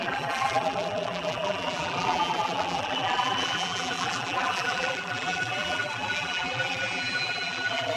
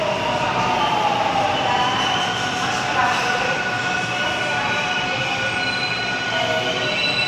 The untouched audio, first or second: second